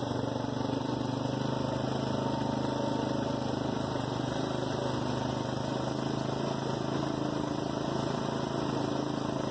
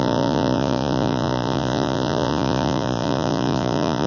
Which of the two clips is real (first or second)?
first